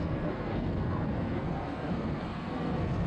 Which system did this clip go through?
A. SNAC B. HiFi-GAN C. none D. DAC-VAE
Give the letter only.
A